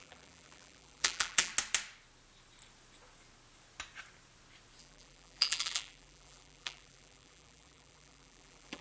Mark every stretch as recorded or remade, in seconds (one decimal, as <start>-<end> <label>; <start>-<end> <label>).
0.0-1.5 remade; 1.5-4.8 recorded; 4.8-8.8 remade